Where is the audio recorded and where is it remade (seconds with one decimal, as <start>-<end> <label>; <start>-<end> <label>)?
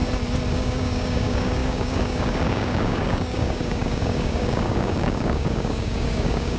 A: 0.0-0.5 recorded; 0.5-6.6 remade